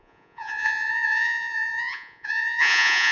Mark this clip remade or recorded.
remade